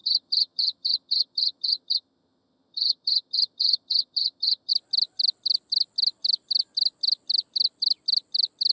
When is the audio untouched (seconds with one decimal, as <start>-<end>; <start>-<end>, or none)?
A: 4.7-8.7